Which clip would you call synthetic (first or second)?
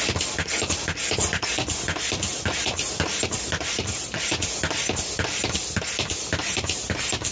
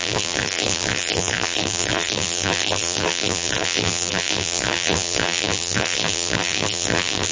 second